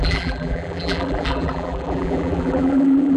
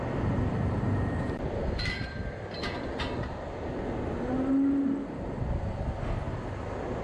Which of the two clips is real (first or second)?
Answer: second